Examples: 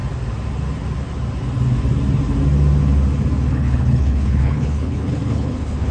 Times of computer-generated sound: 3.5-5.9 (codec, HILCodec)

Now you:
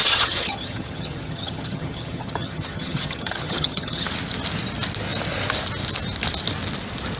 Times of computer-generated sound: 0.0-4.1 (vocoder, HiFi-GAN)

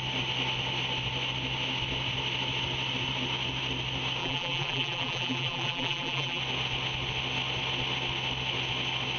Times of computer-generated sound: 4.2-6.4 (vocoder, BigVGAN v2)

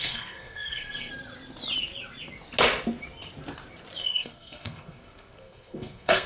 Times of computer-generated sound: 0.0-1.1 (codec, SNAC); 4.0-6.3

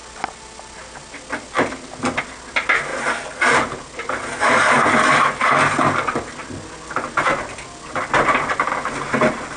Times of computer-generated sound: none

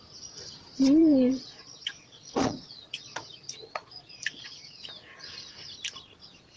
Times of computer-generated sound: 1.0-4.8 (vocoder, Vocos)

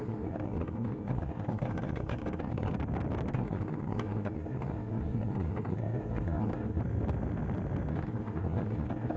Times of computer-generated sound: 0.0-2.7 (codec, SNAC); 3.3-6.8; 7.9-9.2